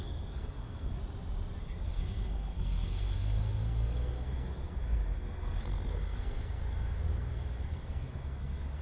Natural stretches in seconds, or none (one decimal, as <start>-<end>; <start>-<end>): 1.0-1.6

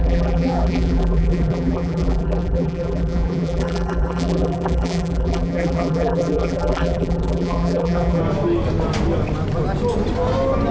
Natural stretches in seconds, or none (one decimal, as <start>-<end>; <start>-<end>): 8.2-10.7

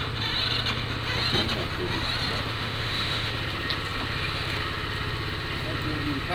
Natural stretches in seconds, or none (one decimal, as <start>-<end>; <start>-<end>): 0.0-2.5; 3.3-6.3